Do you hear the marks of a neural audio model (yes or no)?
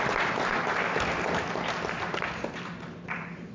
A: no